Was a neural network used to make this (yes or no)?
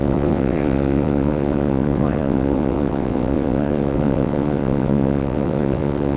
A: yes